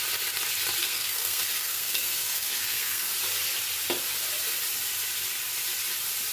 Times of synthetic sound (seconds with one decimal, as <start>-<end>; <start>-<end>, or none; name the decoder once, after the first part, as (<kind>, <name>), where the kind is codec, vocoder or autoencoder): 0.8-3.1 (codec, SNAC)